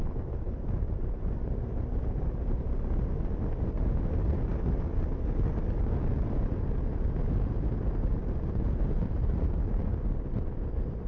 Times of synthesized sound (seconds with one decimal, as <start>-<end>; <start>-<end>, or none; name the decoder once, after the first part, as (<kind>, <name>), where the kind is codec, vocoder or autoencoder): none